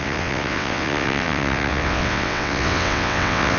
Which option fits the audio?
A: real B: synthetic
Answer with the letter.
B